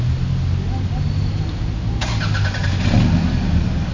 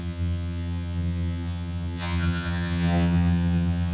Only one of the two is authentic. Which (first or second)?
first